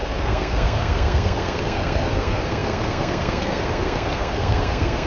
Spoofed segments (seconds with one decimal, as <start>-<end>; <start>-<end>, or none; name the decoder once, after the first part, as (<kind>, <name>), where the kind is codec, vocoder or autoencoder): 0.0-5.1 (codec, SNAC)